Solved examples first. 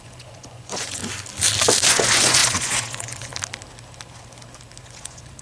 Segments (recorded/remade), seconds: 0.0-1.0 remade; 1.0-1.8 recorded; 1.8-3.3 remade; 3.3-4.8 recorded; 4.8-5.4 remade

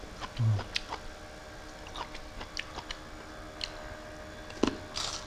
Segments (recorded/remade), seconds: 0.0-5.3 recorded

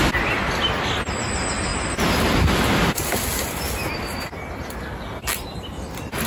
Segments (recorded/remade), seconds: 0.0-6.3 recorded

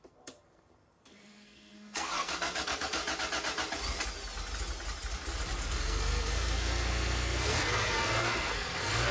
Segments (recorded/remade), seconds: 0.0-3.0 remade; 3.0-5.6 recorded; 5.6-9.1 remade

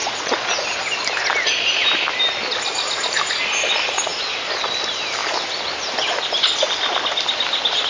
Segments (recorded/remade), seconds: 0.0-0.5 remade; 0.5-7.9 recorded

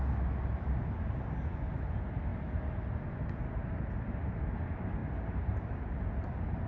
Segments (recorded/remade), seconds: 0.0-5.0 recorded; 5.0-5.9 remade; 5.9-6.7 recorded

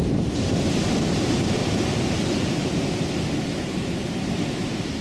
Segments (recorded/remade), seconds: 0.0-1.6 remade; 1.6-2.1 recorded; 2.1-2.6 remade; 2.6-4.6 recorded; 4.6-5.0 remade